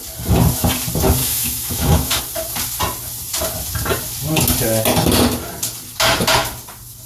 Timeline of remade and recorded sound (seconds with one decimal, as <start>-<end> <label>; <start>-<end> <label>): 0.0-1.2 recorded; 1.2-2.2 remade; 2.2-7.1 recorded